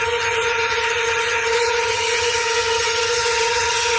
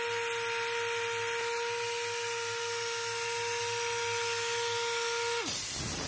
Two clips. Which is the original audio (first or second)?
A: second